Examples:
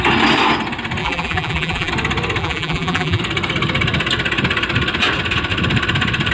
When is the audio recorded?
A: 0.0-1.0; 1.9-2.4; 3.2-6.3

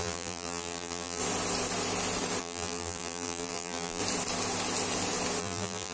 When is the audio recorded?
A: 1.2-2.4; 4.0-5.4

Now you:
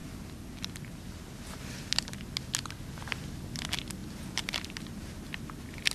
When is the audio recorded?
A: 0.0-5.9

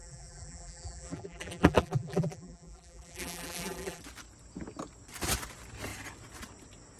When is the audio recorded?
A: 4.0-7.0

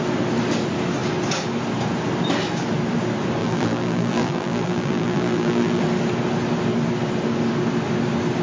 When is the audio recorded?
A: 0.0-3.4; 5.8-8.4